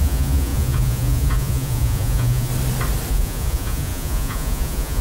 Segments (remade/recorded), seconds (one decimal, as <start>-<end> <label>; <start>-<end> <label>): 0.0-2.5 remade; 2.5-3.1 recorded; 3.1-5.0 remade

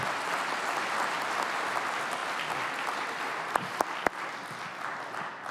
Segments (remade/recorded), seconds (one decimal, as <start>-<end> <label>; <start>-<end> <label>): 0.0-2.2 recorded; 2.2-3.2 remade; 3.2-5.5 recorded

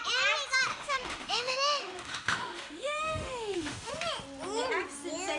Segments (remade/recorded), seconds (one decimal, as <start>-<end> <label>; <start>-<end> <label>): 0.0-0.7 recorded; 0.7-3.9 remade; 3.9-5.4 recorded